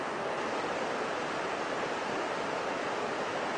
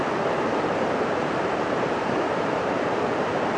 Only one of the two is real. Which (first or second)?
first